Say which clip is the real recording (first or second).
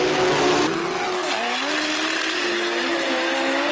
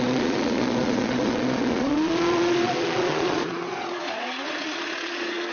first